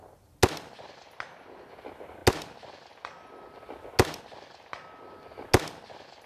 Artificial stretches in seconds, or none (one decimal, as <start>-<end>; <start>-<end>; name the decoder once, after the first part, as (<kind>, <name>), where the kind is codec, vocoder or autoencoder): none